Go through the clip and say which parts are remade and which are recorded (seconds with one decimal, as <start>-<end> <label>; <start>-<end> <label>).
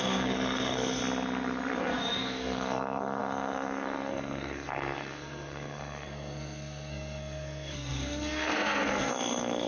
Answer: 0.0-1.0 remade; 1.0-1.8 recorded; 1.8-9.7 remade